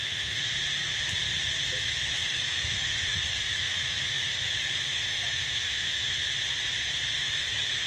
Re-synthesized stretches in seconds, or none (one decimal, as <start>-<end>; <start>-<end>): 0.0-0.5; 1.8-6.2; 7.2-7.9